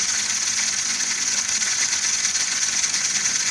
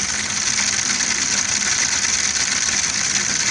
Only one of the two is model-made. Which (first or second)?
first